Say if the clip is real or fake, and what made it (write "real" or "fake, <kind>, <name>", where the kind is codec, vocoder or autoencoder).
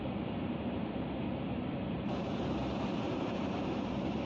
fake, vocoder, BigVGAN v2